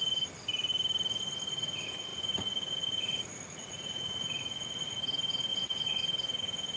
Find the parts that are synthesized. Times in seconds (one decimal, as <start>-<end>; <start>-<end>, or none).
2.1-5.0; 5.5-6.0